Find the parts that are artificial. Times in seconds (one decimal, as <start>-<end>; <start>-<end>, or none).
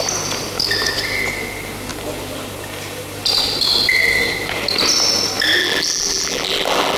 5.6-7.0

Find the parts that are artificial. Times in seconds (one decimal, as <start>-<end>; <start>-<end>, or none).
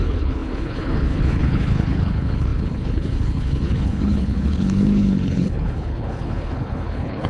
0.0-7.3